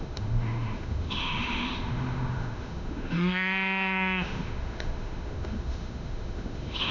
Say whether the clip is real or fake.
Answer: fake